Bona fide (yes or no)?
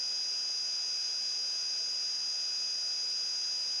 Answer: yes